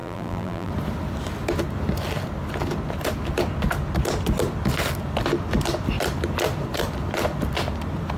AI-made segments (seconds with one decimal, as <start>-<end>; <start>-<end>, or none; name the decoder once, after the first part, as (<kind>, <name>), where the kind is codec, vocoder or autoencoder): 0.0-0.7 (vocoder, BigVGAN v2)